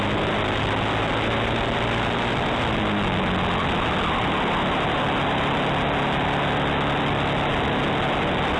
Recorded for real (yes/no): yes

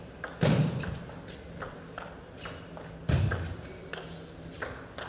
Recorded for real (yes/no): yes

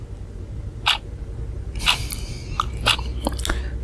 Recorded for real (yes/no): yes